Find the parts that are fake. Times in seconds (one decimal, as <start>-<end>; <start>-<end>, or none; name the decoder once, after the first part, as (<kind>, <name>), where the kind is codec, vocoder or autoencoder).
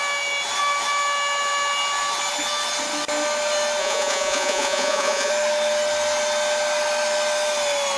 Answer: 3.8-5.3 (vocoder, Vocos)